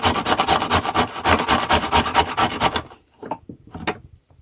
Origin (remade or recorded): recorded